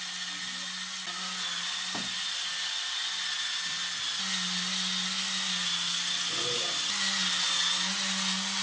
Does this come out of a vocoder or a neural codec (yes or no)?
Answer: no